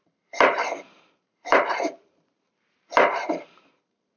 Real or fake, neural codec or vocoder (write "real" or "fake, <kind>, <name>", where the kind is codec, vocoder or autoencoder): fake, vocoder, BigVGAN v2